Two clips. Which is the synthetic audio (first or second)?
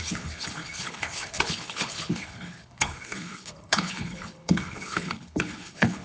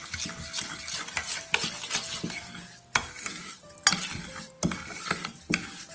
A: first